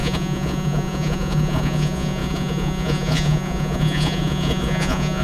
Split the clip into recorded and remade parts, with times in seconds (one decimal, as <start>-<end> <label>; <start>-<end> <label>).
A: 0.0-5.2 remade